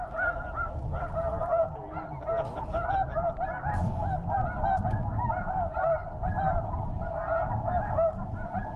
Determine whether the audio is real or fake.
real